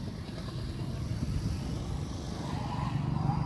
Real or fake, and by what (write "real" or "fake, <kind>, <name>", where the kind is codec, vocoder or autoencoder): real